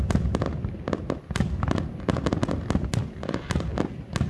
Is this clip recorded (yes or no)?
yes